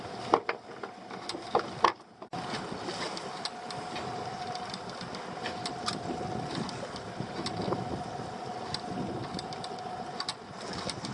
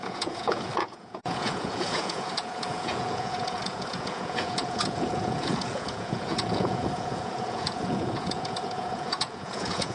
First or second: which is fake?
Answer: second